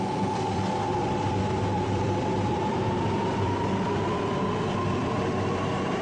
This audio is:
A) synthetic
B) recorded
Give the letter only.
A